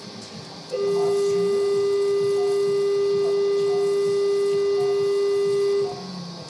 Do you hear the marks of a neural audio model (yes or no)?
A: no